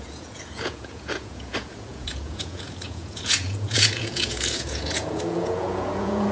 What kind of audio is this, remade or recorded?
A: remade